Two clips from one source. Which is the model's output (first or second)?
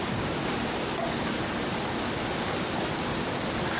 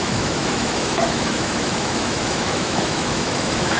second